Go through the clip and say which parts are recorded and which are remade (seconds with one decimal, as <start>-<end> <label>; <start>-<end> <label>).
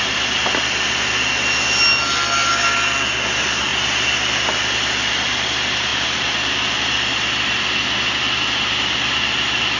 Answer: 0.0-5.9 recorded; 5.9-7.6 remade; 7.6-9.8 recorded